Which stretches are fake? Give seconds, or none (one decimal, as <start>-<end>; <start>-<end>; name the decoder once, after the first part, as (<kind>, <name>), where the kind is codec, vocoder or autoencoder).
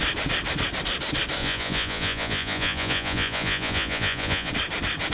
1.4-4.5 (vocoder, Vocos)